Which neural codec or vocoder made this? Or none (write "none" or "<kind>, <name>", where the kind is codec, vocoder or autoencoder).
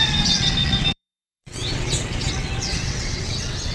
vocoder, WaveNeXt